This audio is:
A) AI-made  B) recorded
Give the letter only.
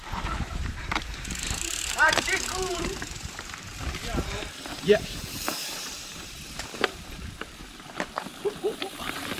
A